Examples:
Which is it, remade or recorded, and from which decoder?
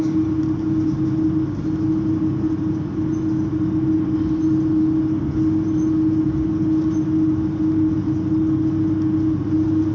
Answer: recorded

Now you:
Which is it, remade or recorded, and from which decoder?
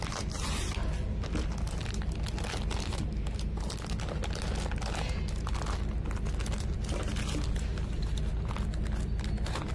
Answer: recorded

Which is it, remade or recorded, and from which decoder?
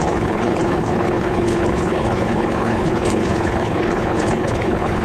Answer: remade, codec, HILCodec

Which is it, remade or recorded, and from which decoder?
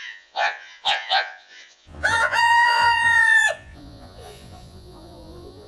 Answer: remade, vocoder, Vocos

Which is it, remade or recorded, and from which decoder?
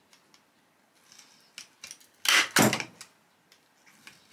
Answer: recorded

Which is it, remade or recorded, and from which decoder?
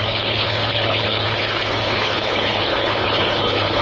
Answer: remade, codec, HILCodec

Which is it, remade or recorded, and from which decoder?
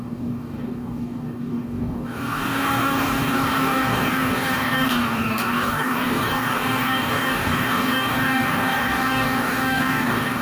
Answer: remade, codec, DAC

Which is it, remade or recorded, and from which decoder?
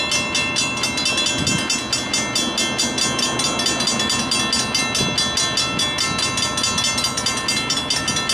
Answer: recorded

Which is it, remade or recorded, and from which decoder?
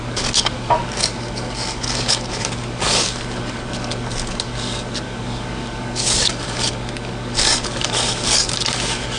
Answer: remade, codec, DAC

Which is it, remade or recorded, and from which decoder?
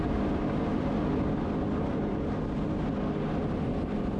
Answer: recorded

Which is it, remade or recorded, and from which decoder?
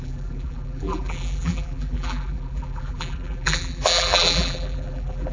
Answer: remade, vocoder, BigVGAN v2